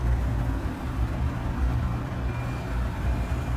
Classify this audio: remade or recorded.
recorded